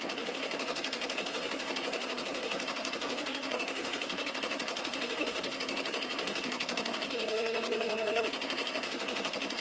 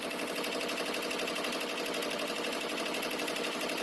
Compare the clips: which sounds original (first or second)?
second